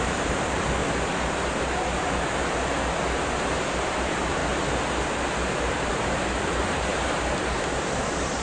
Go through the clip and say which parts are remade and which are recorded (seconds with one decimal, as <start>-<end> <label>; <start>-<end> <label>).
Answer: 0.0-0.8 remade; 0.8-3.2 recorded; 3.2-4.4 remade; 4.4-5.6 recorded; 5.6-6.9 remade; 6.9-7.4 recorded; 7.4-8.4 remade